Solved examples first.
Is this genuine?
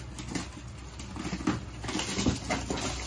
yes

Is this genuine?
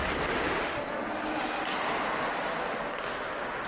yes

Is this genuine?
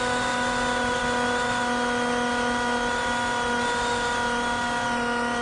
yes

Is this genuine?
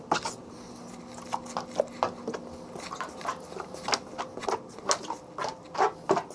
yes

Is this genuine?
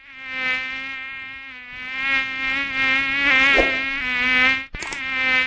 yes